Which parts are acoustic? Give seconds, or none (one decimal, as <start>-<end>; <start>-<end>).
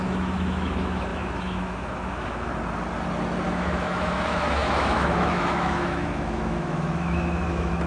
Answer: 2.5-3.5